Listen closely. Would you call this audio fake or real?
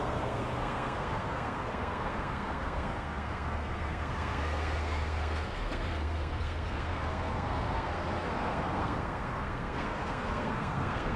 fake